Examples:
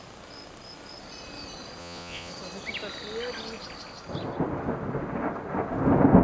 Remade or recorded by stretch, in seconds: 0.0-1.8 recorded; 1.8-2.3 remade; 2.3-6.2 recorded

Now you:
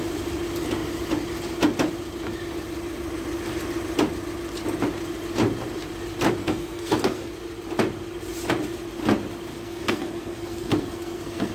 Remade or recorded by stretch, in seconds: 0.0-6.4 recorded; 6.4-7.3 remade; 7.3-9.5 recorded; 9.5-11.5 remade